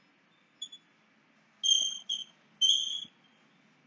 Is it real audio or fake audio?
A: real